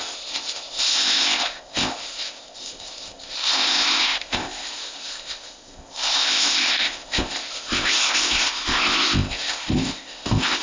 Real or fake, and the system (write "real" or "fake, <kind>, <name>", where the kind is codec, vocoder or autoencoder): fake, codec, ZipCodec